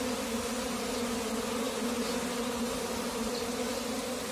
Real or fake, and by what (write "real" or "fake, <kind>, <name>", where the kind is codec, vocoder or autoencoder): real